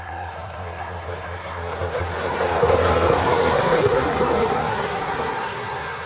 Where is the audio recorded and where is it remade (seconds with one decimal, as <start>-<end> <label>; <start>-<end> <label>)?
0.0-6.1 remade